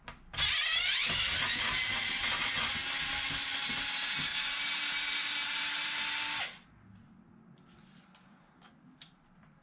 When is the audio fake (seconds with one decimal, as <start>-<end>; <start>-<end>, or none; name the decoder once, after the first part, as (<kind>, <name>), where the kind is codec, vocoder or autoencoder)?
4.3-6.0 (vocoder, BigVGAN v2)